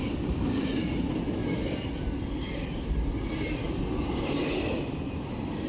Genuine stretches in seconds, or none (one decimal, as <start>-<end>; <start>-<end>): 0.7-1.4; 1.9-5.7

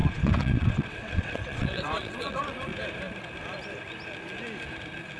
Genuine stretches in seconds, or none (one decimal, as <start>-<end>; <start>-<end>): 2.7-5.2

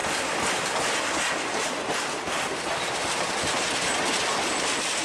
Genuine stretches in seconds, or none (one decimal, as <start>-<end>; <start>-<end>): 0.0-5.0

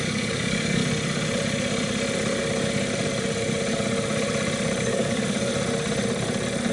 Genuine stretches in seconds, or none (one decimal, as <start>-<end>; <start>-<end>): 0.8-4.8; 5.5-6.7

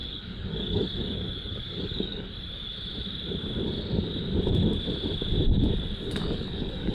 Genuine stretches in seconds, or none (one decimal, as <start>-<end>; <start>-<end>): 2.7-6.0

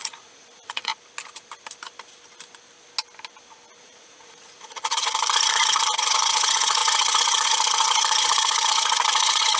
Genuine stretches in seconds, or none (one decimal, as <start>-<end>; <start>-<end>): 0.9-3.8

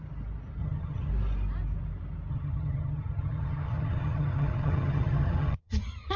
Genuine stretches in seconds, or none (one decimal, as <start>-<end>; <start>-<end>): 0.0-0.6; 1.1-2.3

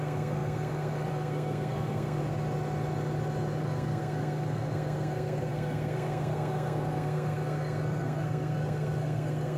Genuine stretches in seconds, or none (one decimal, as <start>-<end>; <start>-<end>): 2.2-3.6